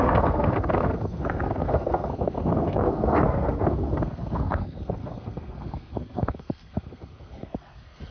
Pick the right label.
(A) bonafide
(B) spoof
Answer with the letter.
B